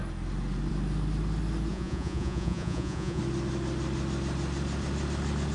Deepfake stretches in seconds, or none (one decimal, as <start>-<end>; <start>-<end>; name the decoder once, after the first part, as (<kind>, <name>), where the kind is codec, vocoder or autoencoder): 1.7-3.2 (vocoder, Vocos)